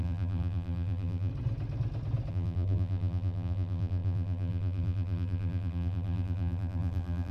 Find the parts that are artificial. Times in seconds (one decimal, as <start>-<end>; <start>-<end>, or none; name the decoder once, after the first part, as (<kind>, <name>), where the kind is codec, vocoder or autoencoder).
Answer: 0.0-1.3 (vocoder, BigVGAN v2); 2.3-7.3